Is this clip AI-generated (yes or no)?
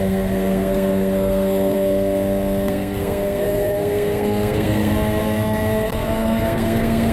yes